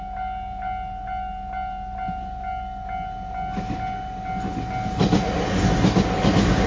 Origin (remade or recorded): recorded